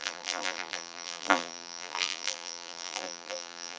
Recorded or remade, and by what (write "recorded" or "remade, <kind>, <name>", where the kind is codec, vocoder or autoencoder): remade, vocoder, BigVGAN v2